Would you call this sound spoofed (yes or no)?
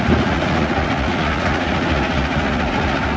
yes